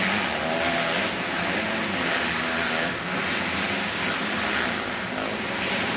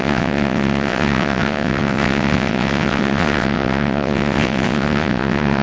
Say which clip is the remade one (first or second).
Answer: second